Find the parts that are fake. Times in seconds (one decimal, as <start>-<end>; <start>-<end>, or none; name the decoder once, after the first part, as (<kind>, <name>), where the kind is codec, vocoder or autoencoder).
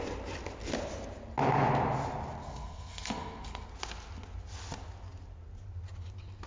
2.4-3.7 (codec, SNAC)